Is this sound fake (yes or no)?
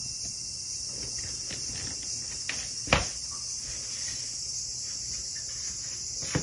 no